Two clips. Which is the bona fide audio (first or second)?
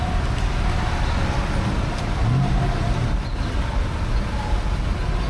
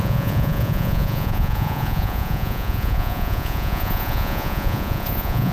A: first